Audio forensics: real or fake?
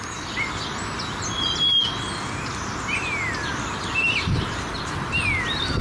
real